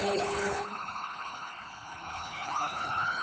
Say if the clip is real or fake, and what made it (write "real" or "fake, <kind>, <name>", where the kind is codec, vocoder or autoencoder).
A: fake, codec, HILCodec